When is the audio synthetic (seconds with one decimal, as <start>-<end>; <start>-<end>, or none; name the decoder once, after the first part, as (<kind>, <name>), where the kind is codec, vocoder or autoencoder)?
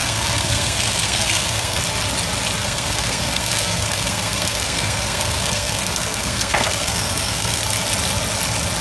0.0-1.8 (codec, SNAC); 2.6-7.6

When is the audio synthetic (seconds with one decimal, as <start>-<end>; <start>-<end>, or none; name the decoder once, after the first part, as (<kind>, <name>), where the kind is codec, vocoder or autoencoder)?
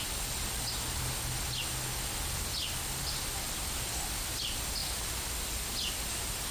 none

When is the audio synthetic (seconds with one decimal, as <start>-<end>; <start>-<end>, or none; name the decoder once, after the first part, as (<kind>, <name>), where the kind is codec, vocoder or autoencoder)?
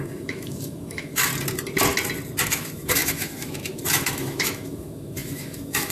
0.0-1.3 (autoencoder, DAC-VAE); 2.4-5.9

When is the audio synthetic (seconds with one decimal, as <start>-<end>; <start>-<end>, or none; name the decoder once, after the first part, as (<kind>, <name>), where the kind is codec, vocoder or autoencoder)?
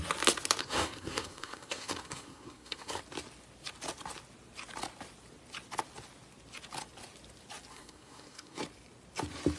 0.6-3.0 (codec, SNAC); 7.7-8.6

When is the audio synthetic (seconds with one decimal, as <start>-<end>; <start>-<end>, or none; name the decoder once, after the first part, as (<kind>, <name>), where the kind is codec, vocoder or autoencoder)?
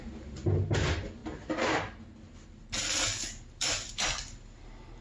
0.0-1.2 (vocoder, BigVGAN v2); 3.3-5.0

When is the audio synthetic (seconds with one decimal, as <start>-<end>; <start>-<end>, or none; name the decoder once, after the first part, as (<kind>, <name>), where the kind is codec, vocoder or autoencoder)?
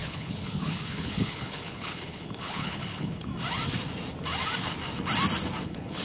0.0-3.3 (codec, HILCodec); 5.6-6.0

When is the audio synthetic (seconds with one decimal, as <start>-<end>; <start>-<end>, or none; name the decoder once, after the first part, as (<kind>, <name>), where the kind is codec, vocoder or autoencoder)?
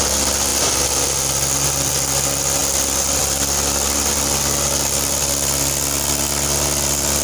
none